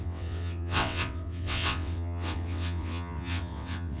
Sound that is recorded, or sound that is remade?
remade